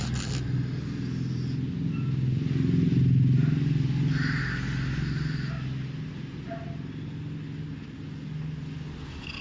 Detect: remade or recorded recorded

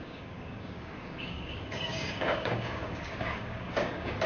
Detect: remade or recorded remade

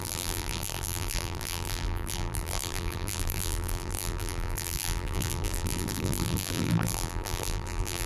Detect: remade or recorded remade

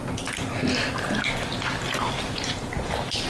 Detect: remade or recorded recorded